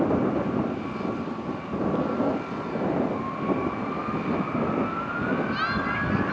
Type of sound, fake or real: real